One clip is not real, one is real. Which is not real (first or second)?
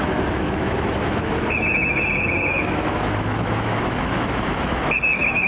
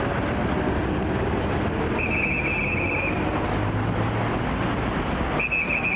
first